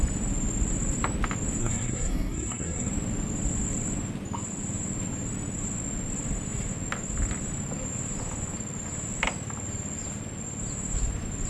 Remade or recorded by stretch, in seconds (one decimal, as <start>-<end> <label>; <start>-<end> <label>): 0.0-1.6 recorded; 1.6-2.9 remade; 2.9-11.5 recorded